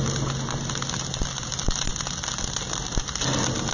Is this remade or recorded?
recorded